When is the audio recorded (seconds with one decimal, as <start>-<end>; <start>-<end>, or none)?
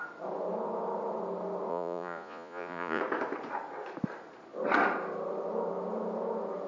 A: 0.0-1.7; 3.0-6.7